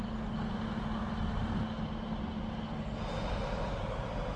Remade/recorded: recorded